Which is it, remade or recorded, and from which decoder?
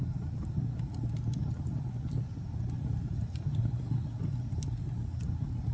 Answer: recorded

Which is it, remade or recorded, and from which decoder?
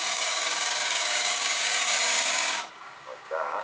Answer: remade, codec, DAC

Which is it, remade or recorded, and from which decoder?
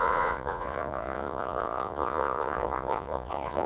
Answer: remade, vocoder, Vocos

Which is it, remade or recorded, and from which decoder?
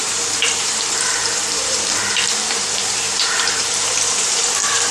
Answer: remade, vocoder, BigVGAN v2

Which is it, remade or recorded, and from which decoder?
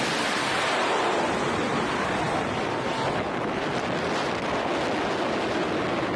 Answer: recorded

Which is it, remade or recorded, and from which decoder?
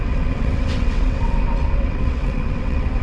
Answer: remade, vocoder, WaveNeXt